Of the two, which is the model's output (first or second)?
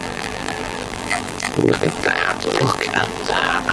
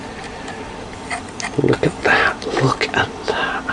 first